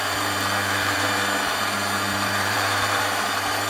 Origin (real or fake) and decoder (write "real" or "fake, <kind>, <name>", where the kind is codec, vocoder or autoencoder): fake, vocoder, BigVGAN v2